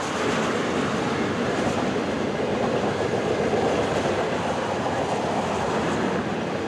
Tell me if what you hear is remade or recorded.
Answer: recorded